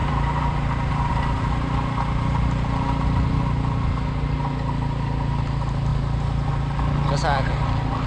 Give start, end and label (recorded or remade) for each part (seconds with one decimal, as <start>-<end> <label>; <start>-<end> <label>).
0.0-0.9 remade; 0.9-8.1 recorded